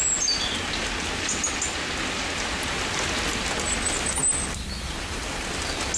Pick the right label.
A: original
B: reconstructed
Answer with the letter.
A